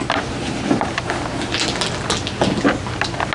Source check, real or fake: real